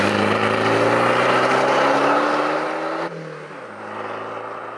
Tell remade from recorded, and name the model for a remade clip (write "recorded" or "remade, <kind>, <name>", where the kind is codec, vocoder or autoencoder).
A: recorded